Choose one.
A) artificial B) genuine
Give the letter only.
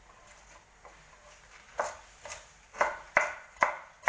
B